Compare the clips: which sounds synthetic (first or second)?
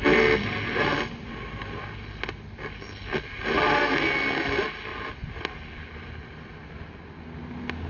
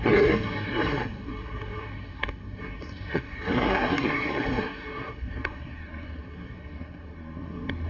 second